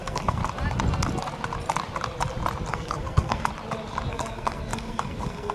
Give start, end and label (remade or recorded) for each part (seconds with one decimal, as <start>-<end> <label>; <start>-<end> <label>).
0.0-0.4 remade; 0.4-2.7 recorded; 2.7-3.5 remade; 3.5-4.1 recorded; 4.1-5.5 remade